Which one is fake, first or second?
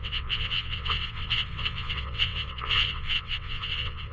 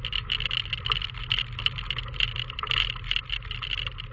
first